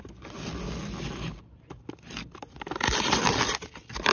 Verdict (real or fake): real